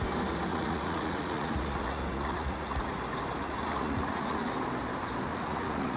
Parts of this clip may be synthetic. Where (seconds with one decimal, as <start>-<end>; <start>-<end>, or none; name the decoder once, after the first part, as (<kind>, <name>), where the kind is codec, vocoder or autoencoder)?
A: 0.5-3.0 (vocoder, Vocos); 3.4-4.5; 5.3-6.0